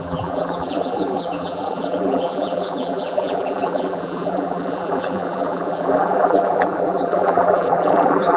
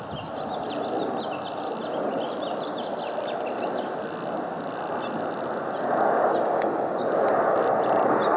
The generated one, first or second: first